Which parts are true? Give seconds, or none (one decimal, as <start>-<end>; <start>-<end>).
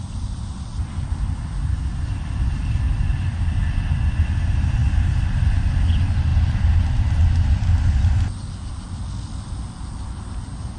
0.0-10.8